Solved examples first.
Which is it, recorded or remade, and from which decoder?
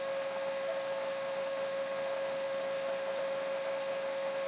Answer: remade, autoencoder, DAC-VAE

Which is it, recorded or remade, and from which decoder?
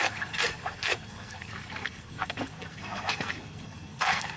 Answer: remade, codec, SNAC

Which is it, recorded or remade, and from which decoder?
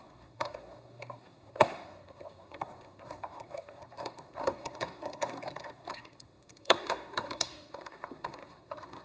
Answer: remade, codec, SNAC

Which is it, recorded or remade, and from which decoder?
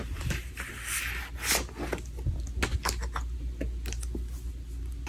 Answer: recorded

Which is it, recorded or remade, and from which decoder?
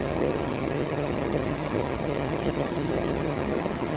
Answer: remade, vocoder, HiFi-GAN